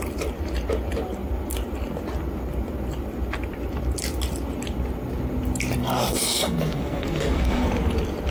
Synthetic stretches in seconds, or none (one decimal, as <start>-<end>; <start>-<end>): 5.8-7.7